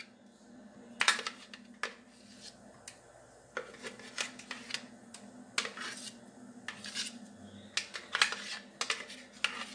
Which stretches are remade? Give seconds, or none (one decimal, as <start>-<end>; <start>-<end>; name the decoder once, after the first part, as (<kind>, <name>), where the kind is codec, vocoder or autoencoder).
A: none